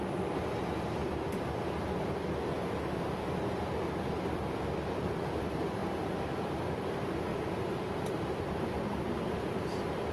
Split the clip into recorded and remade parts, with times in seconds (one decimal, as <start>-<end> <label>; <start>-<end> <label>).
0.0-5.8 recorded; 5.8-6.5 remade; 6.5-7.3 recorded; 7.3-10.1 remade